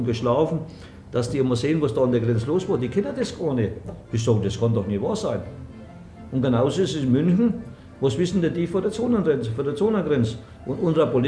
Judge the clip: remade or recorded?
recorded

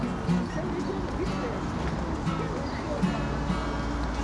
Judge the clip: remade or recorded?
recorded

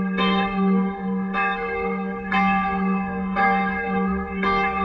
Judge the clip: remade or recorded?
remade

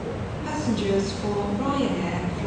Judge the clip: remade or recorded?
recorded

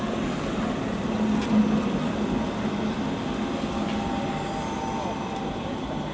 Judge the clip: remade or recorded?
recorded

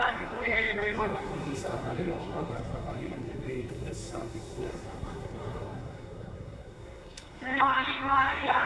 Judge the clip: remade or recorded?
remade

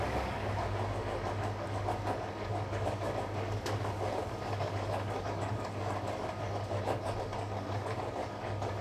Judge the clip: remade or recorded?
remade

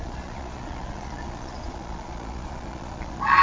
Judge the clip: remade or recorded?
remade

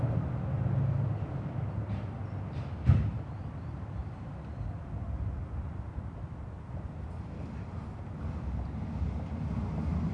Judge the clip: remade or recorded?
recorded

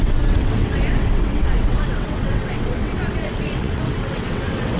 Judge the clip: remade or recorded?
remade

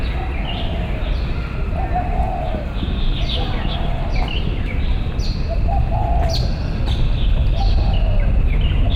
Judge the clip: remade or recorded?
recorded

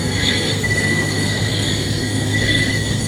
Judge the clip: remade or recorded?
remade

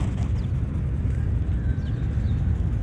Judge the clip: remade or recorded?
recorded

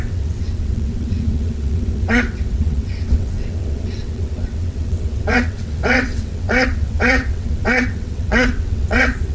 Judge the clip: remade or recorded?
remade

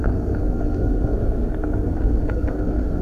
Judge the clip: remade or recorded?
remade